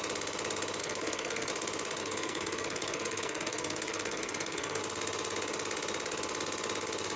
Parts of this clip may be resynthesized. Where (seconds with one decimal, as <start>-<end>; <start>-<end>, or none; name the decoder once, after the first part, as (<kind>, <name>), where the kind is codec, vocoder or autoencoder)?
0.8-1.5 (codec, SNAC); 2.0-4.8